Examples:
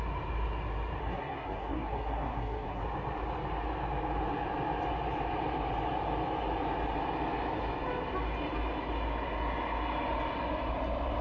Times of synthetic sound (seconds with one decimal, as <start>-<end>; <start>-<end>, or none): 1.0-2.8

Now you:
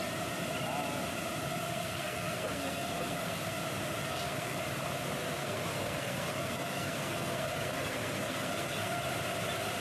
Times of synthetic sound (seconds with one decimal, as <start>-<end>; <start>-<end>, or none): 1.5-3.6; 4.0-4.6; 5.4-9.0

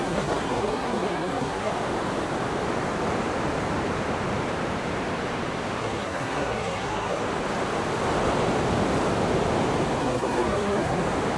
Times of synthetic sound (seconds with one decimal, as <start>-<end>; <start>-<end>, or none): 0.0-1.7; 5.8-7.2; 10.0-11.0

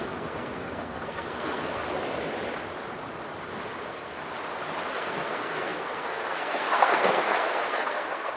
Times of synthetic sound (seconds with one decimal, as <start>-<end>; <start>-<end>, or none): 0.0-1.8; 3.8-4.2; 4.9-8.4